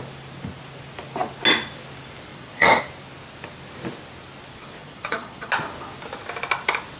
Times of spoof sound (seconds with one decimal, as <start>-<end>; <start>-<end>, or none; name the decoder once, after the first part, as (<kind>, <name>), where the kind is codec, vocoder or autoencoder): 2.3-2.8 (vocoder, Vocos); 4.8-5.5